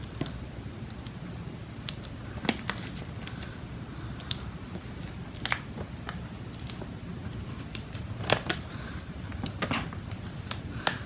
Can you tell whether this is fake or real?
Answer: real